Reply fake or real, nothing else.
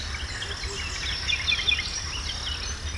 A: real